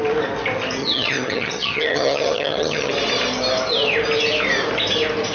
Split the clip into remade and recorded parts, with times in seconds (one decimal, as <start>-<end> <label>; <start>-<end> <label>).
0.0-0.8 recorded; 0.8-2.9 remade; 2.9-5.3 recorded